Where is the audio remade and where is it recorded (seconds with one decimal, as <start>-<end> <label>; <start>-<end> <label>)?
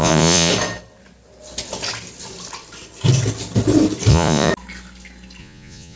0.0-0.5 remade; 0.5-4.1 recorded; 4.1-4.5 remade; 4.5-5.4 recorded; 5.4-6.0 remade